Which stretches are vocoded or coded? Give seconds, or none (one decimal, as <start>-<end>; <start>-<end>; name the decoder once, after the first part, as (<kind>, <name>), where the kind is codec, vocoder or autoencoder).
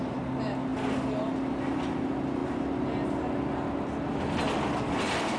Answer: none